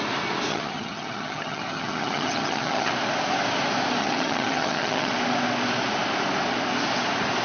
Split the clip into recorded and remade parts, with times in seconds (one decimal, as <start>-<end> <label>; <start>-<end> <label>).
0.0-0.5 recorded; 0.5-2.9 remade; 2.9-4.0 recorded; 4.0-5.1 remade; 5.1-7.4 recorded